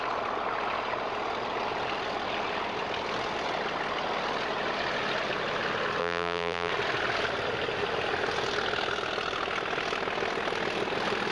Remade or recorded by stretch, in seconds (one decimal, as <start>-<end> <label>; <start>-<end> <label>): 0.0-6.0 recorded; 6.0-6.7 remade; 6.7-11.3 recorded